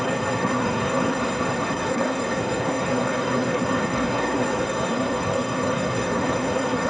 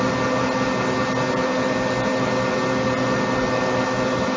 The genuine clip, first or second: second